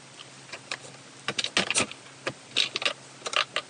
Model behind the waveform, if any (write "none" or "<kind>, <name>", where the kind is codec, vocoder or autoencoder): none